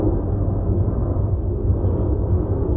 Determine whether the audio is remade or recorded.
recorded